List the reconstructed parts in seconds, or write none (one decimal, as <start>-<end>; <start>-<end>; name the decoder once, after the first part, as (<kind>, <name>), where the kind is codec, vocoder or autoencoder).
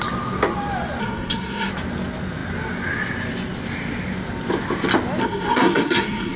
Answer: 1.0-1.7 (codec, SNAC); 5.2-6.4